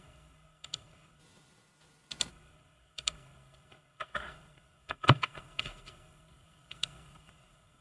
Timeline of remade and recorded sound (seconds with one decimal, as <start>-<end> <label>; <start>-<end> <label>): 0.0-1.2 remade; 1.2-2.3 recorded; 2.3-7.8 remade